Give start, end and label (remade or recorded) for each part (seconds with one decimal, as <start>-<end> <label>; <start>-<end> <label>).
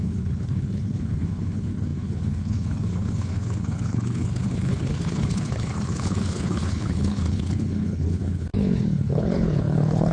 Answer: 0.0-10.1 remade